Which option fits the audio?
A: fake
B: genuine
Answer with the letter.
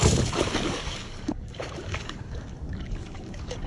A